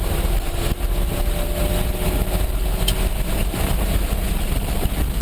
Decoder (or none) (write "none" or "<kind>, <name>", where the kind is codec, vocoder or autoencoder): none